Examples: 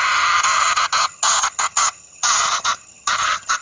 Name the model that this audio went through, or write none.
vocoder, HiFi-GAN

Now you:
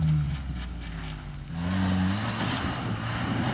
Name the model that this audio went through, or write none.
none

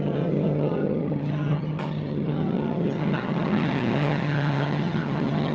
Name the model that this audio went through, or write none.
vocoder, HiFi-GAN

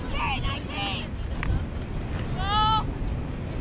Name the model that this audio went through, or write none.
none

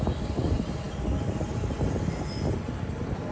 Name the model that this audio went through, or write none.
none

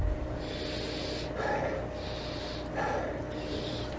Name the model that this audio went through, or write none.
none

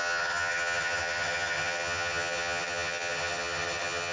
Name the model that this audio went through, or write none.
vocoder, HiFi-GAN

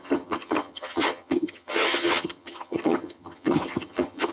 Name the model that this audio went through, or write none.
vocoder, HiFi-GAN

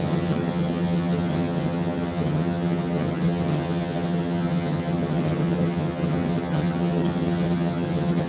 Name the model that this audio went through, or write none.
vocoder, HiFi-GAN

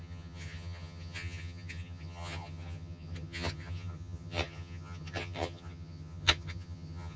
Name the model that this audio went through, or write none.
vocoder, HiFi-GAN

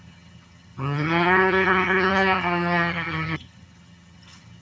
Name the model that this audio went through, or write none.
vocoder, HiFi-GAN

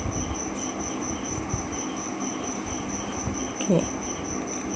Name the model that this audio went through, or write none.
none